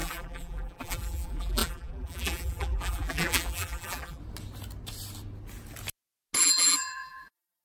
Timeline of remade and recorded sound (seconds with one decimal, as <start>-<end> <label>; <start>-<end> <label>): 0.0-4.2 remade; 4.2-6.4 recorded; 6.4-7.6 remade